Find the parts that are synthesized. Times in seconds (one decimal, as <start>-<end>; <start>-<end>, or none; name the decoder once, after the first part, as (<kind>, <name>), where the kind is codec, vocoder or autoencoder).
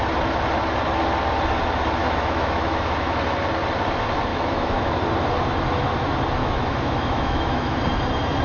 2.0-3.2 (autoencoder, DAC-VAE); 4.3-4.9; 6.4-7.8